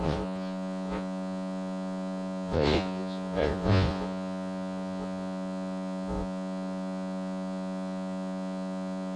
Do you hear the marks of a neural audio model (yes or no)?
yes